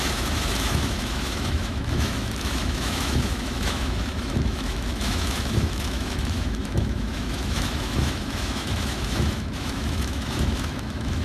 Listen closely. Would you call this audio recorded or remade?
remade